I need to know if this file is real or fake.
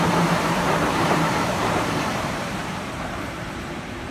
fake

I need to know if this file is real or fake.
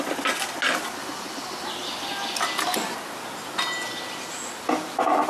real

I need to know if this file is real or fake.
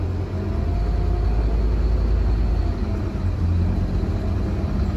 real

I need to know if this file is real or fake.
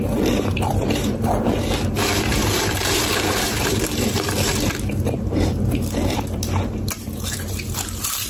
fake